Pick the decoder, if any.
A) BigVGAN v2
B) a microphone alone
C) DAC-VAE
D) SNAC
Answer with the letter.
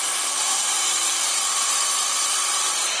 A